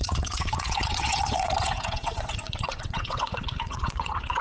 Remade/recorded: remade